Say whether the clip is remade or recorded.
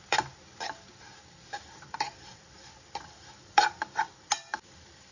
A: remade